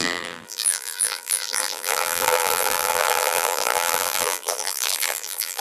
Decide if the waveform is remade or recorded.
remade